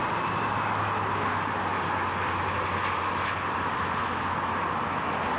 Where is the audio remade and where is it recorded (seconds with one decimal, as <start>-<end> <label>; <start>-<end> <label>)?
0.0-5.4 recorded